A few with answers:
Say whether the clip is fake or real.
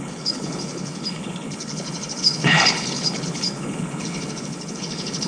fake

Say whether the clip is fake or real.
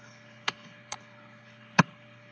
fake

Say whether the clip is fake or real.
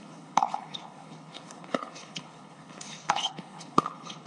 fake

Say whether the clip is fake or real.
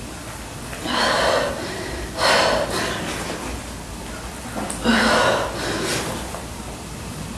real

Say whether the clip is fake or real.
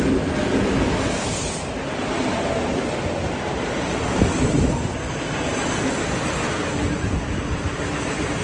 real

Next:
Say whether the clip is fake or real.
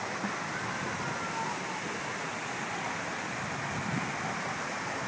real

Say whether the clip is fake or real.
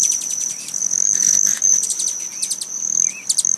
real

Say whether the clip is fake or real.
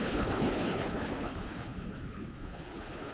fake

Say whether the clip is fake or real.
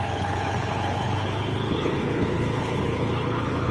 fake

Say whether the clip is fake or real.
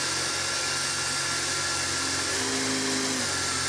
real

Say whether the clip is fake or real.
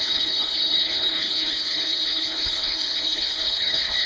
fake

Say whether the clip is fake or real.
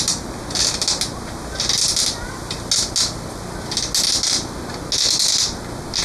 real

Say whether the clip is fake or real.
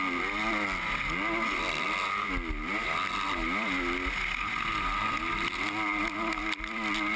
real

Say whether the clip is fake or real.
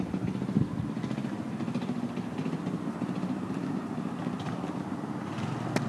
real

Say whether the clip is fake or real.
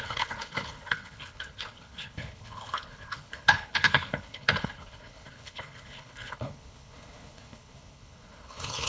fake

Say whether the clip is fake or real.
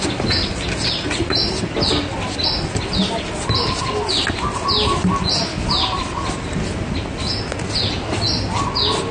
real